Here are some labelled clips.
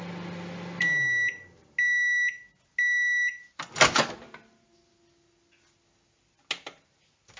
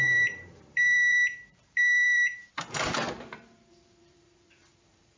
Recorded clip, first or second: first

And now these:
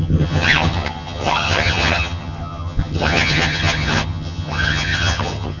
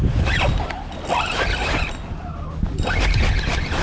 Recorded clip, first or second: second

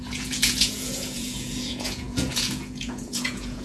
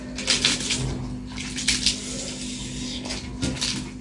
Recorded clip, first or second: second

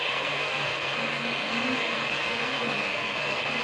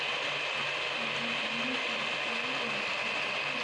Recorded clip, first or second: second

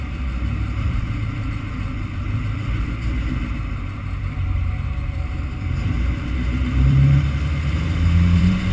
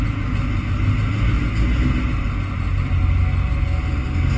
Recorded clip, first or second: second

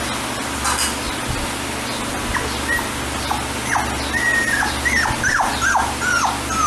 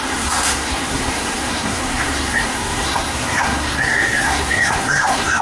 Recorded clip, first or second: first